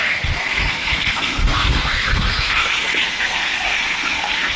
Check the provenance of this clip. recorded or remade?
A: remade